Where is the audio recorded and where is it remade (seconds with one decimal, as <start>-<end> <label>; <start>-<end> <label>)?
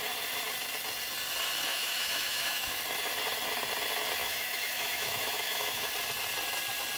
0.0-1.7 recorded; 1.7-2.8 remade; 2.8-4.2 recorded; 4.2-5.9 remade; 5.9-7.0 recorded